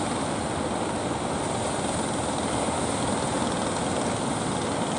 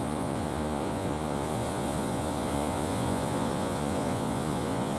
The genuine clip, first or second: first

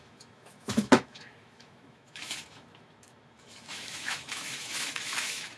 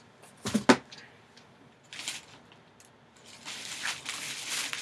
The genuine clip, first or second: second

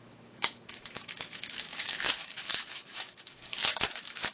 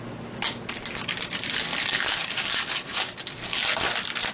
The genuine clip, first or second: second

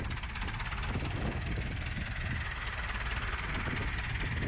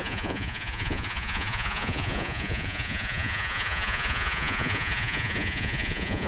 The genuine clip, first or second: first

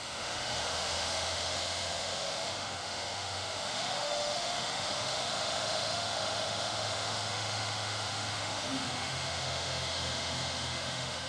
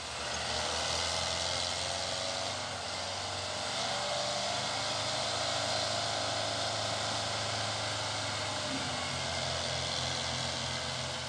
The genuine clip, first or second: second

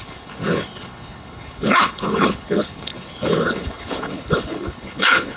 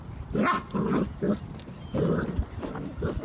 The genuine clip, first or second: second